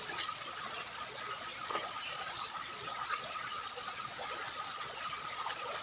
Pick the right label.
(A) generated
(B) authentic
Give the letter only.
A